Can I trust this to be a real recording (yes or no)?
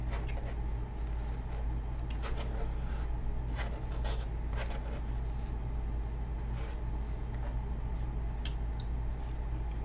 yes